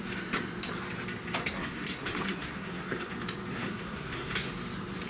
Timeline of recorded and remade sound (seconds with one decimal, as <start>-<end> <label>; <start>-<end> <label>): 0.0-1.4 recorded; 1.4-3.1 remade; 3.1-3.5 recorded; 3.5-4.5 remade; 4.5-5.1 recorded